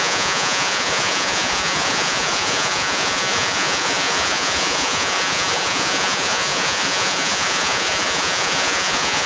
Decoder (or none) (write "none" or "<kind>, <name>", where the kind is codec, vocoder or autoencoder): vocoder, Vocos